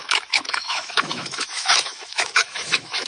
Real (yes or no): no